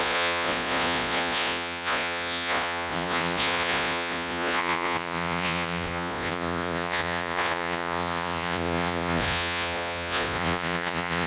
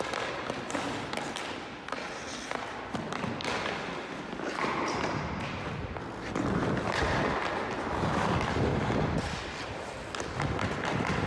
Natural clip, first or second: second